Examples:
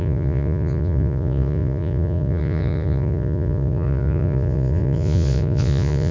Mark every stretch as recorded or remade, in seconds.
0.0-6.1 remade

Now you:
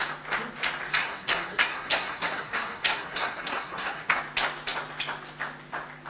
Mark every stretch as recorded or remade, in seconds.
0.0-1.0 recorded; 1.0-4.2 remade; 4.2-6.1 recorded

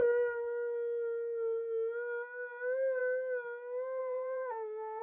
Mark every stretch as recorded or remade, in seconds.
0.0-4.0 recorded; 4.0-5.0 remade

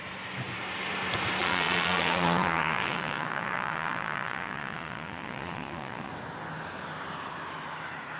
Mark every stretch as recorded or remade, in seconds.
0.0-1.4 recorded; 1.4-6.1 remade; 6.1-8.2 recorded

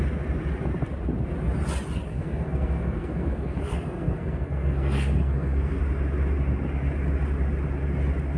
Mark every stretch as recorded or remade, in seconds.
0.0-2.1 recorded; 2.1-5.8 remade; 5.8-8.4 recorded

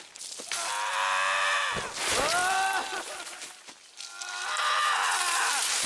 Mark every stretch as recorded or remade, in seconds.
0.0-2.4 recorded; 2.4-5.2 remade; 5.2-5.9 recorded